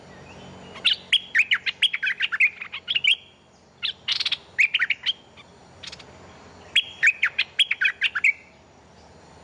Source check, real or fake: real